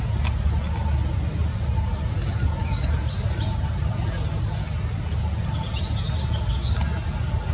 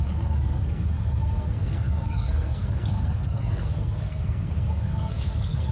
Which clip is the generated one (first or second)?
second